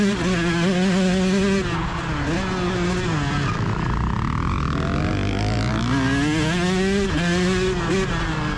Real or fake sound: real